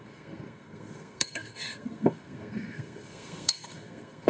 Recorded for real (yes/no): no